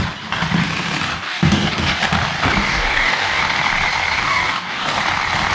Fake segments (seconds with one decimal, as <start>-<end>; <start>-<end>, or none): 1.1-2.0; 2.6-3.4; 4.2-5.0